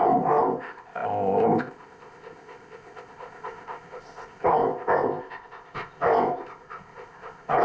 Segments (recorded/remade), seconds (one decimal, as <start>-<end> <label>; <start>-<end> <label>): 0.0-7.6 remade